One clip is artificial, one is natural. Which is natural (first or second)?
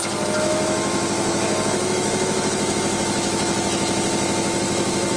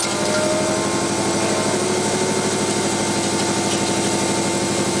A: second